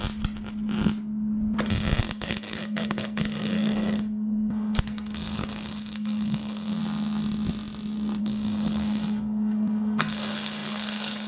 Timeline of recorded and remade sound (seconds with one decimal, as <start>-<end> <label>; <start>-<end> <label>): 0.0-2.0 recorded; 2.0-6.8 remade; 6.8-8.2 recorded; 8.2-11.3 remade